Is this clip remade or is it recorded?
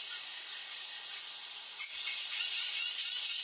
remade